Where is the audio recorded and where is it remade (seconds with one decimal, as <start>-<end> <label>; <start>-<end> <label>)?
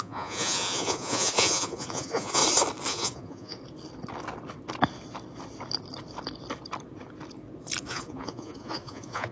0.0-2.4 remade; 2.4-2.9 recorded; 2.9-3.6 remade; 3.6-7.8 recorded; 7.8-9.3 remade